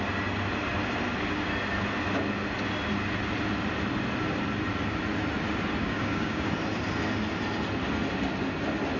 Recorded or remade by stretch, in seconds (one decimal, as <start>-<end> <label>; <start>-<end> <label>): 0.0-5.8 recorded; 5.8-6.5 remade; 6.5-9.0 recorded

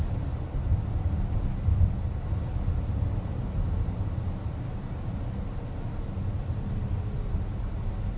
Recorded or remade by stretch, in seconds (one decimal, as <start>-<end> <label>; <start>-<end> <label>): 0.0-8.2 recorded

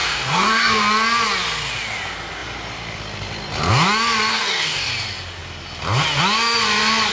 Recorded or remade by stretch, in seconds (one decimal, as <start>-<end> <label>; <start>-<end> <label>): 0.0-0.8 remade; 0.8-4.3 recorded; 4.3-4.9 remade; 4.9-7.1 recorded

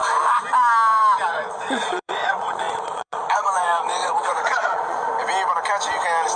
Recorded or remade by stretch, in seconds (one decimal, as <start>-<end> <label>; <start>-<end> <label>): 0.0-1.3 recorded; 1.3-5.1 remade; 5.1-6.4 recorded